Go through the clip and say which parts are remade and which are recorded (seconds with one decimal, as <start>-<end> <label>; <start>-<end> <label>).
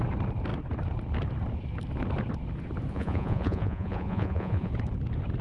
0.0-2.9 recorded; 2.9-4.7 remade; 4.7-5.4 recorded